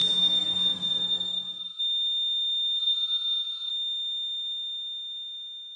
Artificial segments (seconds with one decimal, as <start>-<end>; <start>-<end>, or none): 0.0-1.8; 2.8-3.7

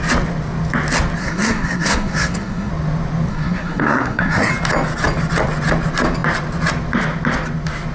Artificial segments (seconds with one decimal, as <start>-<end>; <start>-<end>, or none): 1.2-2.7; 3.3-4.5

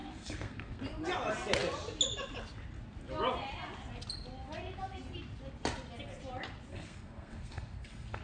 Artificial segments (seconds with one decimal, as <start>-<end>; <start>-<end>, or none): 0.0-0.8; 6.7-8.2